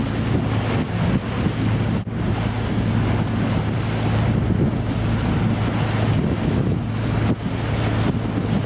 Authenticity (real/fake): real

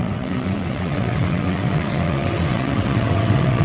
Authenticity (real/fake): fake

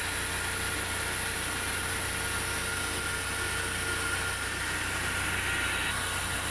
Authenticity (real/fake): real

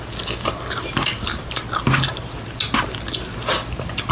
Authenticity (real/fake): real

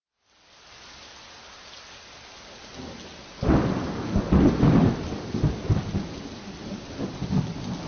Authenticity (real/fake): real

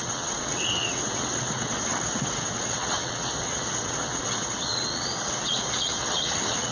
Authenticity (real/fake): fake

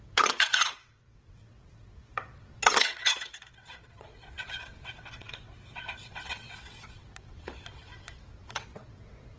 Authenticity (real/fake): fake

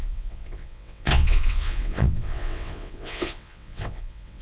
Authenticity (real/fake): fake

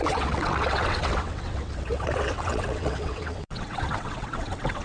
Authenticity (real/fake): fake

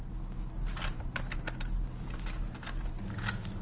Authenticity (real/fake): real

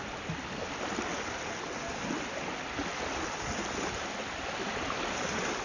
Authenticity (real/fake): real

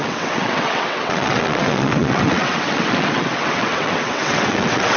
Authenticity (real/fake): fake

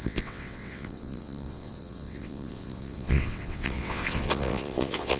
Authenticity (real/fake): fake